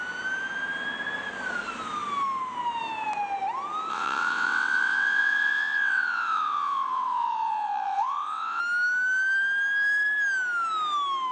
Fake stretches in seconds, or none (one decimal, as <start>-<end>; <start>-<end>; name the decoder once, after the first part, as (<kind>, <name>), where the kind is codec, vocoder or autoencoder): 3.9-8.6 (vocoder, WaveNeXt)